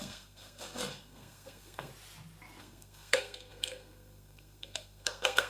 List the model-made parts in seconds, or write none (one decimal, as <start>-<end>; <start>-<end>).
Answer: 0.0-1.9; 2.6-5.5